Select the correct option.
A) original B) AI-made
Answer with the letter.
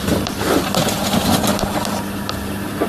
A